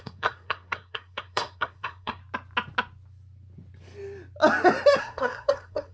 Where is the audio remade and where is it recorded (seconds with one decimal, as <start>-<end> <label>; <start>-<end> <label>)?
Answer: 0.0-2.2 remade; 2.2-5.0 recorded; 5.0-5.9 remade